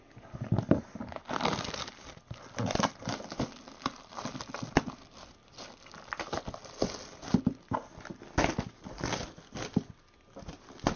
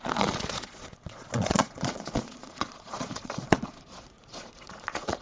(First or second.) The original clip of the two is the first